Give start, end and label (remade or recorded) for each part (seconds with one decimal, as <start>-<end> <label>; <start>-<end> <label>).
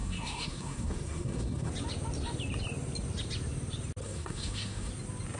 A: 0.0-1.7 remade; 1.7-4.0 recorded; 4.0-4.9 remade; 4.9-5.4 recorded